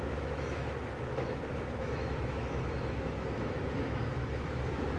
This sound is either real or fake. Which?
fake